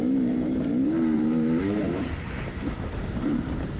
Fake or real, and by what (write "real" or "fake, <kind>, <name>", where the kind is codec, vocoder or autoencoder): fake, vocoder, BigVGAN v2